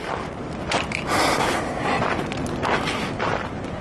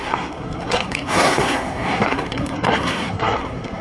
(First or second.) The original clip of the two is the first